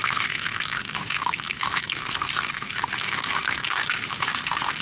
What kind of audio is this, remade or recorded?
remade